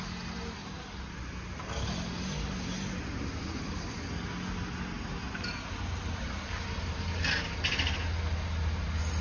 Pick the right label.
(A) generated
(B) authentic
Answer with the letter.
B